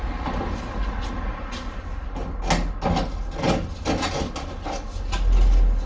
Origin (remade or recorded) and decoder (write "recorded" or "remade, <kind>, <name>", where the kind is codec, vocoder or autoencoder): recorded